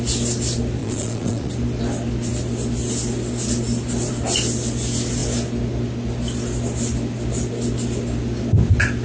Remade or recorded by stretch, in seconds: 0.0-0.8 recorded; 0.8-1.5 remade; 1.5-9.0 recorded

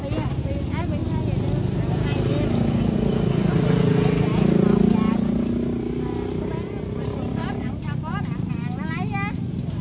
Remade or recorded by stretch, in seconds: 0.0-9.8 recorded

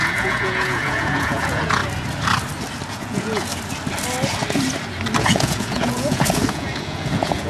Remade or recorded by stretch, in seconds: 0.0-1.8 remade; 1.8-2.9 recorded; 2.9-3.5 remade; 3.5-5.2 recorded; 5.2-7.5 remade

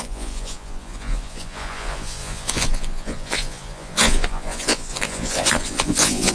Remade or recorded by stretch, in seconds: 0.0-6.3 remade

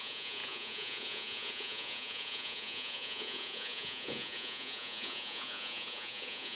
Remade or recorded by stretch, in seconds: 0.0-6.5 remade

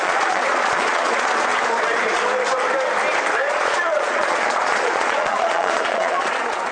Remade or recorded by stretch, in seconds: 0.0-1.5 remade; 1.5-3.5 recorded; 3.5-6.7 remade

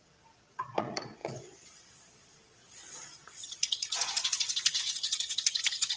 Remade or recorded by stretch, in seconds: 0.0-6.0 remade

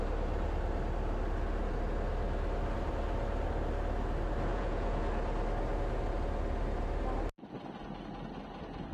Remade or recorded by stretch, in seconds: 0.0-4.5 recorded; 4.5-5.0 remade; 5.0-8.9 recorded